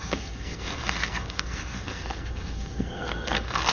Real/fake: fake